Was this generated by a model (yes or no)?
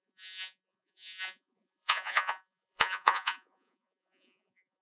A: yes